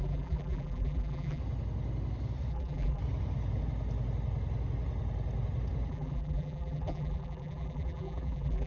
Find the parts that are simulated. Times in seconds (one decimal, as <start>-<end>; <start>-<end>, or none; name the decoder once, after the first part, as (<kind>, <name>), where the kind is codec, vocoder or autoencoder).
0.0-1.4 (vocoder, BigVGAN v2); 2.5-3.0; 5.9-8.7